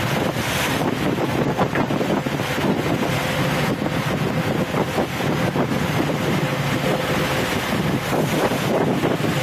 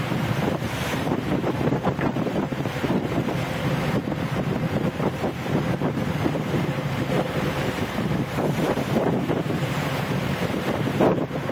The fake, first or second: second